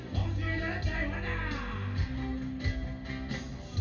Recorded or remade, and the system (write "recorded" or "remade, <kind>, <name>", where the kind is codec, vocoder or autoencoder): recorded